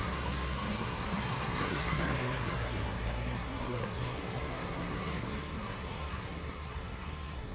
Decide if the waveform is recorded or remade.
remade